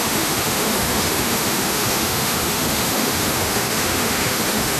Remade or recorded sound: remade